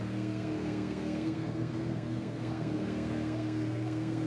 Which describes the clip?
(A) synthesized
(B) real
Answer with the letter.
A